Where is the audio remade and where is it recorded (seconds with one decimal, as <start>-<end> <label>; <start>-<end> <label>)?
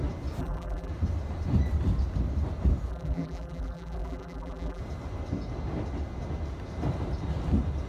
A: 0.0-0.4 recorded; 0.4-0.9 remade; 0.9-2.9 recorded; 2.9-4.8 remade; 4.8-7.9 recorded